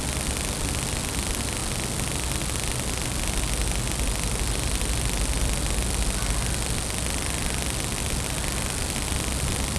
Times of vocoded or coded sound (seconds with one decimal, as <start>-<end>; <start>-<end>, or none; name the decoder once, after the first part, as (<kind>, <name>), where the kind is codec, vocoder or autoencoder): none